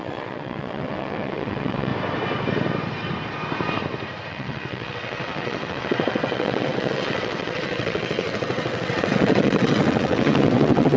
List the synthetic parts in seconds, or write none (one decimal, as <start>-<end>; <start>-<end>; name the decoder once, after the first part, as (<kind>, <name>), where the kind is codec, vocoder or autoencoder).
0.0-1.9 (vocoder, WaveNeXt); 4.3-11.0